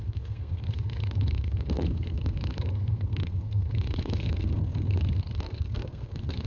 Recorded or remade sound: remade